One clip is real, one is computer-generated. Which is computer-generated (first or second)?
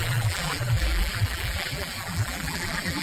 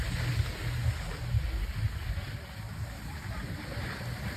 first